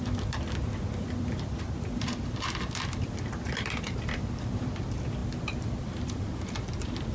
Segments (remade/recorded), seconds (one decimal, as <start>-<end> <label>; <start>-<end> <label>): 0.0-5.2 remade; 5.2-5.8 recorded; 5.8-7.1 remade